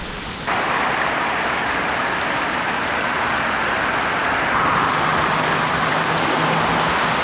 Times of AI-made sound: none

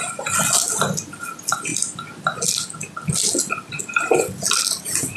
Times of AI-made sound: none

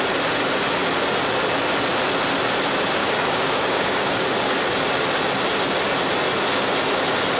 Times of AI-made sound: 3.0-4.9 (codec, DAC)